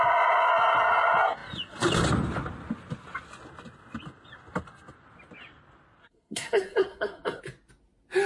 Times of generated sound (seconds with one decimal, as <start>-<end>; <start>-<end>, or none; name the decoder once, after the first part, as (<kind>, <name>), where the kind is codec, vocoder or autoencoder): 6.0-7.4 (codec, SNAC)